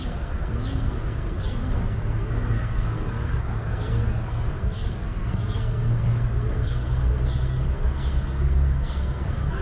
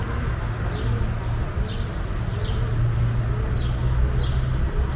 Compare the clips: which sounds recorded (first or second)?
second